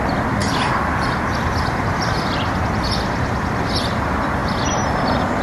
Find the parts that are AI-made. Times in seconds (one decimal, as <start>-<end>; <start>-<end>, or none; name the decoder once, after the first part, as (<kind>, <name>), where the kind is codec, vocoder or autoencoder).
none